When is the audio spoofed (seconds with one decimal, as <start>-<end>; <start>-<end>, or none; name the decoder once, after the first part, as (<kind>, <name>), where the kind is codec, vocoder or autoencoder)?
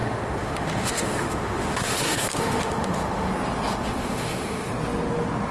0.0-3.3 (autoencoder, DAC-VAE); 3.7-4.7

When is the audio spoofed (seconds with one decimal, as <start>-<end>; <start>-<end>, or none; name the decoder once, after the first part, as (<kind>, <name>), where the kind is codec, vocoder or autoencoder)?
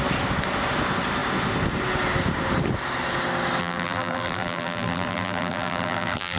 3.6-6.4 (vocoder, BigVGAN v2)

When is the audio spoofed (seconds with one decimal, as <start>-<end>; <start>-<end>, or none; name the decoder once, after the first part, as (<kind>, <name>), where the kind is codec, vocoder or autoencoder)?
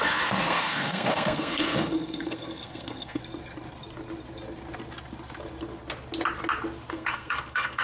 0.0-3.2 (codec, SNAC); 6.9-7.8